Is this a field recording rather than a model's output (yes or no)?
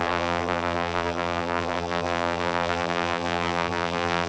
no